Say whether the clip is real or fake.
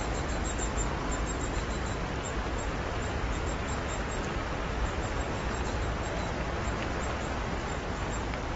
real